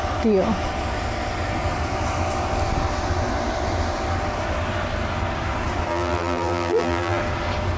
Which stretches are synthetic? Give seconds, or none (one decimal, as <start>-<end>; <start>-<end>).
5.9-7.2